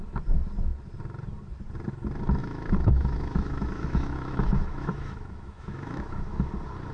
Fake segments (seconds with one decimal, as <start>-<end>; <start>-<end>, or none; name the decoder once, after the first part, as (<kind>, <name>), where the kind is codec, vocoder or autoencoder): 2.4-6.5 (autoencoder, DAC-VAE)